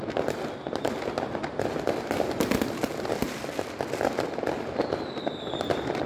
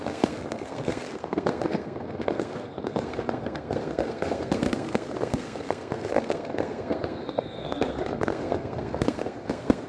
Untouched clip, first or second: first